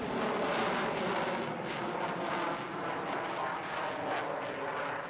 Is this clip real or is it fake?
fake